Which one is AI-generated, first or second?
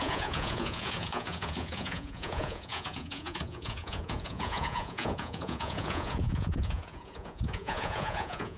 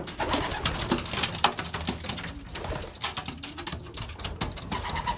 first